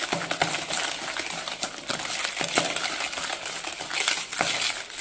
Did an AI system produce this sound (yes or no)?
no